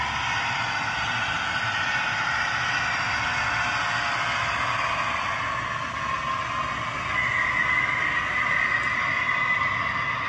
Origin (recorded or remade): recorded